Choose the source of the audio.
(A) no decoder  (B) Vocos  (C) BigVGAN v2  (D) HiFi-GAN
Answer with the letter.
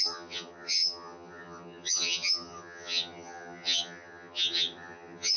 D